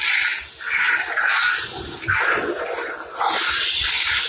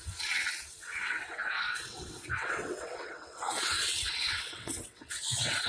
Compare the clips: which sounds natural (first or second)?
first